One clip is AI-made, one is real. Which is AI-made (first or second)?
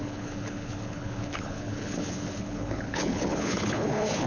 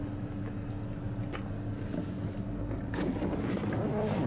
first